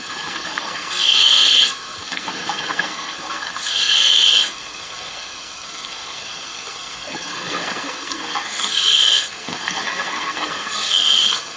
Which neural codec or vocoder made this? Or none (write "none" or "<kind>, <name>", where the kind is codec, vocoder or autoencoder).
codec, SNAC